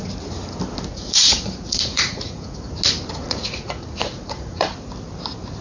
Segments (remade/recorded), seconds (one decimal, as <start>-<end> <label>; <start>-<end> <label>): 0.0-0.9 recorded; 0.9-2.7 remade; 2.7-3.2 recorded; 3.2-4.7 remade; 4.7-5.6 recorded